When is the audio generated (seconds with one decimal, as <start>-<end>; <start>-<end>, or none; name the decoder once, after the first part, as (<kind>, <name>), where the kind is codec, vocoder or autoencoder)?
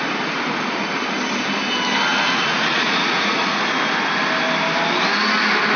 2.1-3.6 (vocoder, Vocos)